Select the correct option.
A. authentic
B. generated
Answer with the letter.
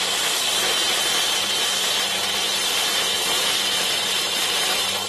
B